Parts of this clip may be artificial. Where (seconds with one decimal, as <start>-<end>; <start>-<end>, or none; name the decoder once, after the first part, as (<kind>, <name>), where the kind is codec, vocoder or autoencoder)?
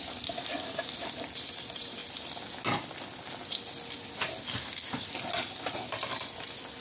0.0-2.0 (vocoder, BigVGAN v2); 6.1-6.8